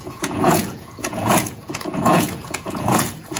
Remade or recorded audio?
remade